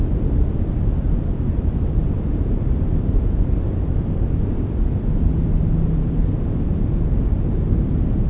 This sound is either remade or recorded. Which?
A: recorded